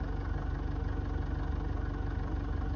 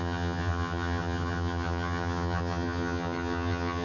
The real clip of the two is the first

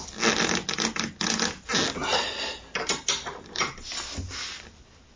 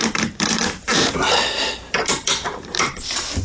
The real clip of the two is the first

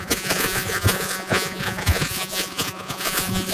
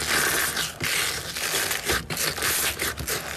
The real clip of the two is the second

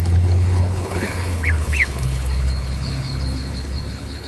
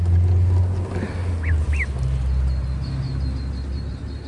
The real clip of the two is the second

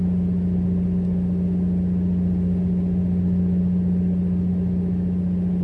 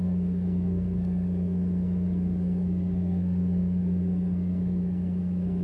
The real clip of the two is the first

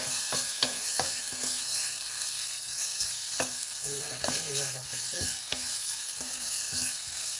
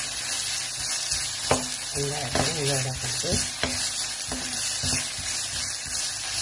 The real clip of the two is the second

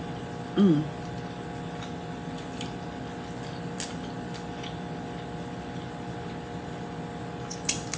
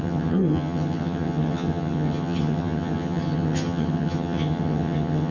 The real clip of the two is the first